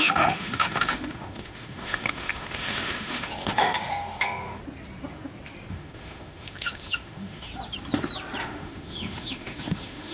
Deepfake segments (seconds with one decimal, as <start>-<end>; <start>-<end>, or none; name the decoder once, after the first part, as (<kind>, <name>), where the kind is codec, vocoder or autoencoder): 0.0-4.6 (autoencoder, DAC-VAE); 5.7-7.5; 8.4-10.1